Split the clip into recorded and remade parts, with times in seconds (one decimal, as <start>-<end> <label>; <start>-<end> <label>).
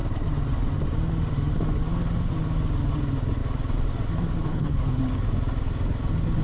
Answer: 0.0-4.3 recorded; 4.3-5.0 remade; 5.0-6.4 recorded